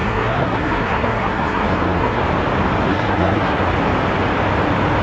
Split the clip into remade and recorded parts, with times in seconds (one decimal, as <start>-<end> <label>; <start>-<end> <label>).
0.0-2.2 remade; 2.2-2.9 recorded; 2.9-3.6 remade; 3.6-5.0 recorded